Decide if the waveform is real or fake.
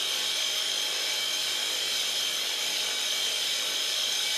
fake